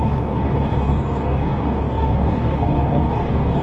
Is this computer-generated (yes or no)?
yes